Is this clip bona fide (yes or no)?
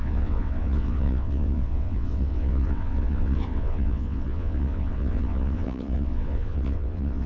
no